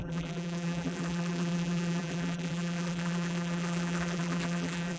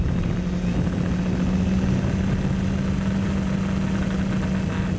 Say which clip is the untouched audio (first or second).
second